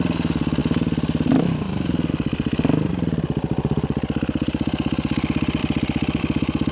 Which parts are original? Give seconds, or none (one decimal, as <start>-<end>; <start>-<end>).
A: 0.0-6.7

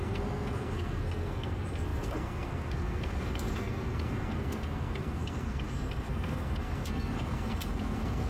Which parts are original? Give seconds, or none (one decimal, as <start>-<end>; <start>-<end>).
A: none

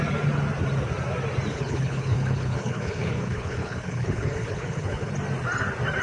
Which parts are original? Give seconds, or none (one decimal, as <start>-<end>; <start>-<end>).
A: 0.0-1.5; 5.1-6.0

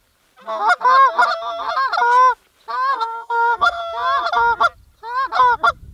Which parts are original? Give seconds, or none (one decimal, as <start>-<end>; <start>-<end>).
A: 0.0-2.9; 3.8-5.9